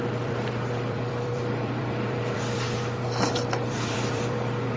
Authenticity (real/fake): fake